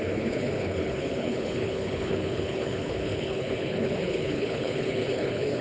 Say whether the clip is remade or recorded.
remade